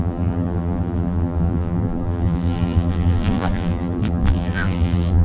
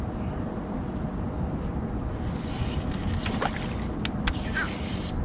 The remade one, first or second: first